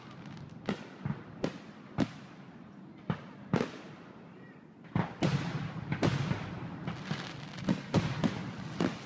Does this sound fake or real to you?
real